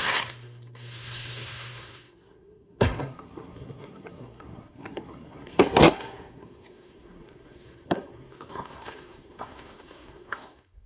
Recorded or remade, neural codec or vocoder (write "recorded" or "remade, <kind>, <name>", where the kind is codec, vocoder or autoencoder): remade, codec, SNAC